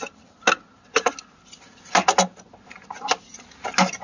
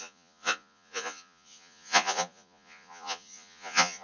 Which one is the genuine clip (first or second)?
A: first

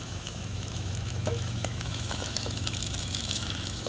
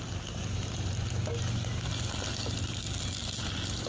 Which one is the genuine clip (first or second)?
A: second